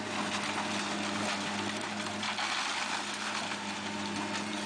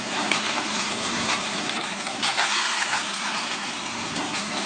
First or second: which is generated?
second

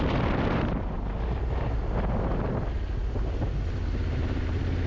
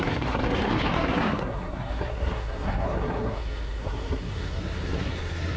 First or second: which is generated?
second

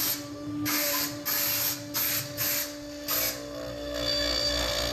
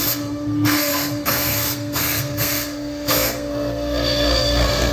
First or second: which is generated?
second